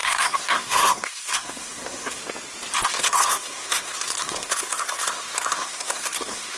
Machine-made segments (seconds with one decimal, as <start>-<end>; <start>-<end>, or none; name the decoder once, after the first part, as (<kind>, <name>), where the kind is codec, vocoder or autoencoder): 0.0-2.2 (codec, SNAC); 2.9-6.6